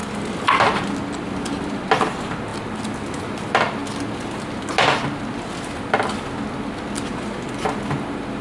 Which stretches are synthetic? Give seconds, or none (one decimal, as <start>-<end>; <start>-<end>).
none